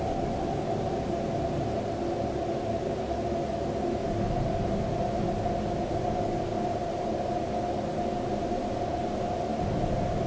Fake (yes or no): no